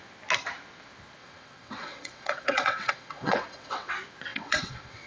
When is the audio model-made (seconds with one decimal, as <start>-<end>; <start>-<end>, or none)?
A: 1.2-3.9; 4.3-5.1